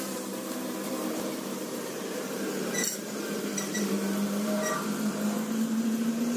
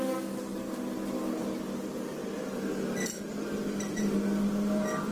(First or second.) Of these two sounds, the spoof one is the first